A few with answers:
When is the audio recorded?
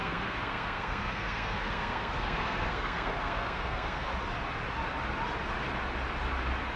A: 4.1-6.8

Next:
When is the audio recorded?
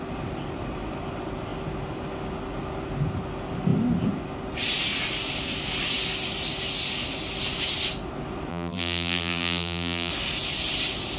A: 0.0-8.5; 10.1-11.2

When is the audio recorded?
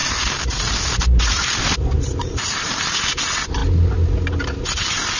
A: 3.1-5.2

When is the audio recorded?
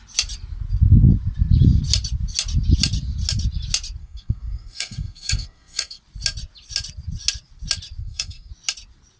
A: 0.0-4.0; 6.0-8.0; 8.5-9.2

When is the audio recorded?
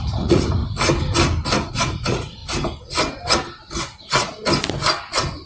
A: 0.6-1.7; 2.4-3.8; 4.3-5.5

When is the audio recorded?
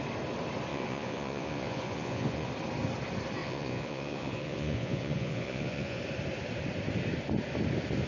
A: 0.0-0.7; 2.5-3.4; 6.0-8.1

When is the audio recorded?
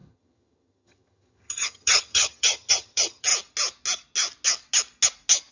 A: 3.3-5.5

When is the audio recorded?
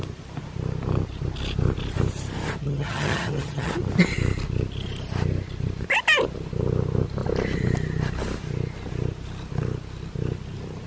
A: 0.0-2.6; 3.7-10.9